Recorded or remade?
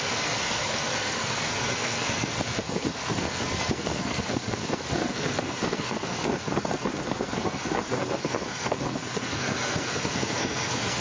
remade